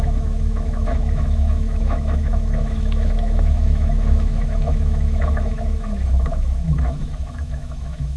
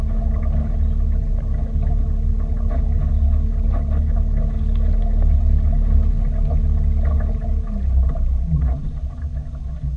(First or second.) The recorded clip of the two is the second